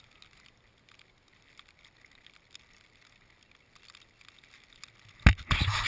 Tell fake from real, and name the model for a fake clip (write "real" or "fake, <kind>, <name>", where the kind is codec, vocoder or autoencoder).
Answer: real